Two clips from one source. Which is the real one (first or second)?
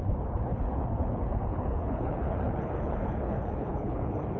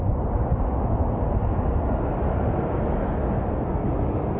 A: second